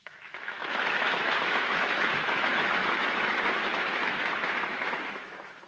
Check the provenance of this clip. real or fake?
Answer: fake